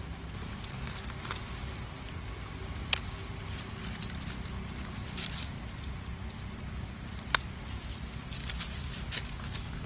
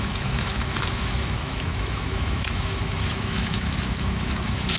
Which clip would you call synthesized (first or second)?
second